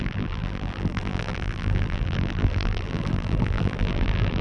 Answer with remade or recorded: remade